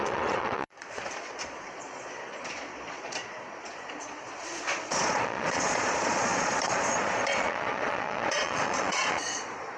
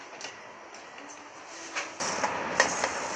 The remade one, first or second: first